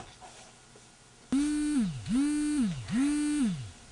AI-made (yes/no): no